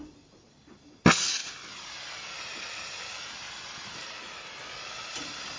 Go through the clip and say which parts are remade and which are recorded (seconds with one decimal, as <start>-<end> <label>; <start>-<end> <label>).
0.0-5.6 recorded